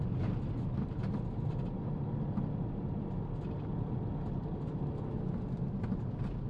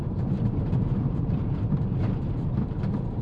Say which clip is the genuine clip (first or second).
first